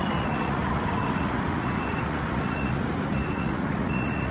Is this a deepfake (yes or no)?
yes